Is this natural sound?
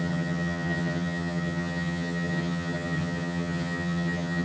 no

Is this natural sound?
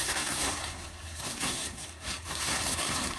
no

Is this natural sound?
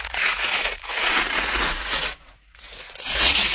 no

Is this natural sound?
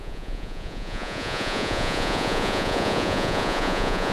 no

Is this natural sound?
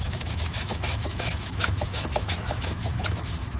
no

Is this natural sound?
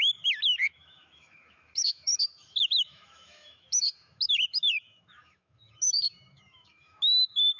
no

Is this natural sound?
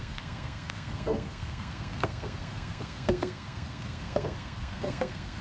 no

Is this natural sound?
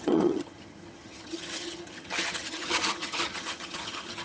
no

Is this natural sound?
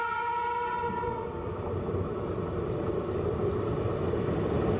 no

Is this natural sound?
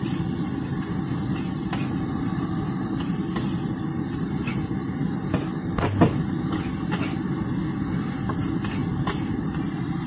yes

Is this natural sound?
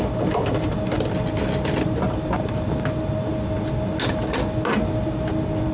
yes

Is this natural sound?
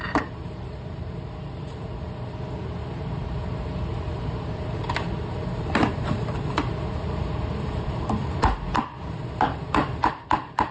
no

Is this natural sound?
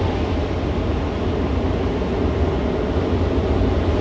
yes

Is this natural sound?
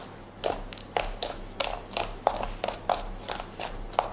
yes